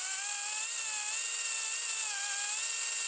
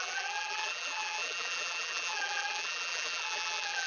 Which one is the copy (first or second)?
second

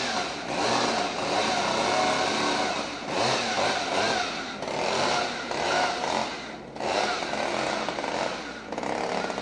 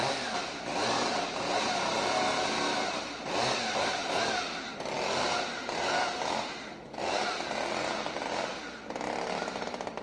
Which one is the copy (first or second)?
second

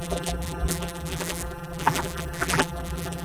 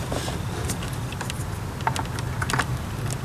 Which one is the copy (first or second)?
first